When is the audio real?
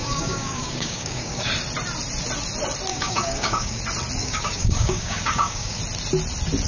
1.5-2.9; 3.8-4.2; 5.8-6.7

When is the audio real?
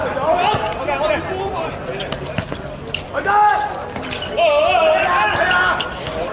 0.0-6.3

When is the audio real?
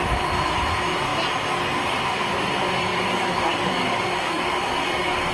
0.0-2.9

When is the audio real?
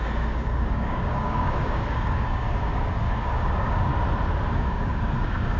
3.9-4.5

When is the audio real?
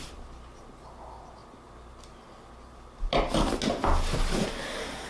0.0-5.1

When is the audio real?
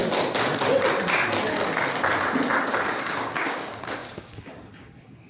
0.0-2.7